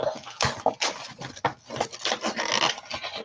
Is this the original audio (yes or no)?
yes